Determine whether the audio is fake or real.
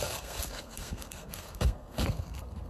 fake